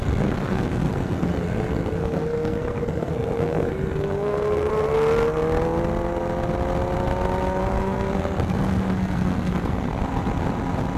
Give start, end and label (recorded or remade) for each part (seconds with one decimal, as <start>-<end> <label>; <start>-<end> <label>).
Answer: 0.0-4.7 remade; 4.7-7.6 recorded; 7.6-10.0 remade; 10.0-11.0 recorded